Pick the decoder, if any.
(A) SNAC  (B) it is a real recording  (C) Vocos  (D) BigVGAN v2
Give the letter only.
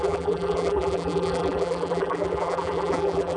D